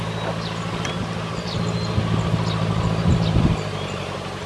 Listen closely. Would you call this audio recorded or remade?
recorded